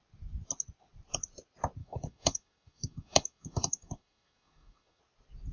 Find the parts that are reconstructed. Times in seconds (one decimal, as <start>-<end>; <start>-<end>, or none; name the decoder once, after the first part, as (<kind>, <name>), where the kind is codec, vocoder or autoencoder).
1.8-5.0 (autoencoder, DAC-VAE)